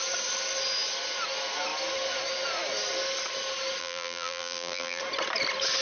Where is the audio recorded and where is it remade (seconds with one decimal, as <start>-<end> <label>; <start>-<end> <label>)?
0.0-3.8 recorded; 3.8-5.0 remade; 5.0-5.8 recorded